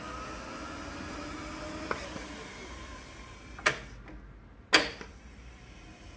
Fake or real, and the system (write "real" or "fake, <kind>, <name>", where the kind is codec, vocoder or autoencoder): real